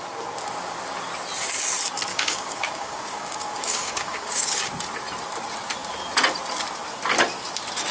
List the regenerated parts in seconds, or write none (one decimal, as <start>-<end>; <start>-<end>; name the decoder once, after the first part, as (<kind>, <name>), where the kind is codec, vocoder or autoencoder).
2.1-4.7 (codec, DAC)